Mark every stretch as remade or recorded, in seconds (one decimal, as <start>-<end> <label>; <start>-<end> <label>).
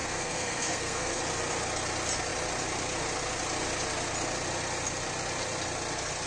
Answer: 0.0-1.2 remade; 1.2-6.3 recorded